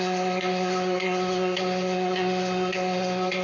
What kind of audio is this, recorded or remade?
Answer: remade